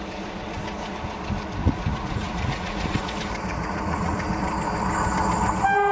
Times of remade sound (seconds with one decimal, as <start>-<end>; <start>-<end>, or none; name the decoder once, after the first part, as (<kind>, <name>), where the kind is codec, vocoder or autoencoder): 1.6-3.1 (vocoder, Vocos); 3.5-4.2